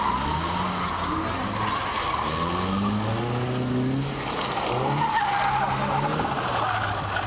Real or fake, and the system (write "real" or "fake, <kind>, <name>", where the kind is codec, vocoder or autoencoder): real